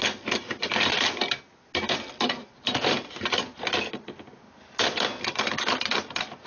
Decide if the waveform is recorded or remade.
recorded